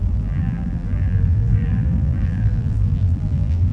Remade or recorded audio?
remade